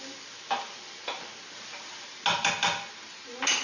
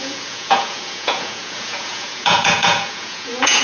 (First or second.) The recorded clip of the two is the first